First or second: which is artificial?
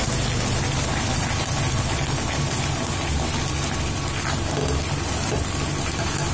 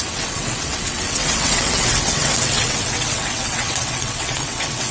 second